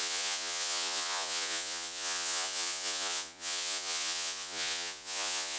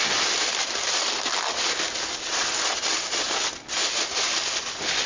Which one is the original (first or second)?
second